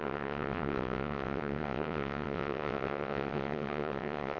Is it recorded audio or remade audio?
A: remade